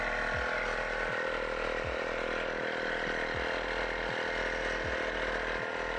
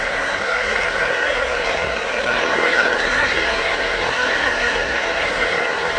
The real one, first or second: first